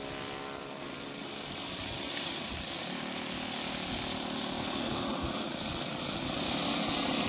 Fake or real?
real